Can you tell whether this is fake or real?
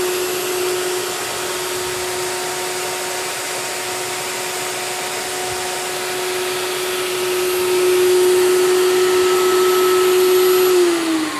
real